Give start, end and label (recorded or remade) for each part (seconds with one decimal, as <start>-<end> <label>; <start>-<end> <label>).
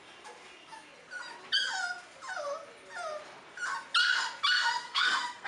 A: 0.0-4.8 recorded; 4.8-5.5 remade